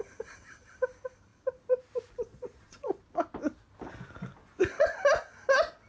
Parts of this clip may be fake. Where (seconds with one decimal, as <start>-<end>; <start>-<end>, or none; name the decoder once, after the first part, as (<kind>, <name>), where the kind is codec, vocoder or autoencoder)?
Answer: 2.3-3.0 (vocoder, Vocos); 4.4-5.0